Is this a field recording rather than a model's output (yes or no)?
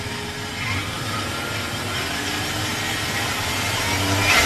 yes